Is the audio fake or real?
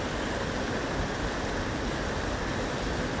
real